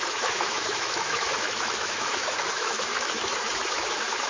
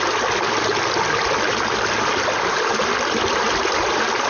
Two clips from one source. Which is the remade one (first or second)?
first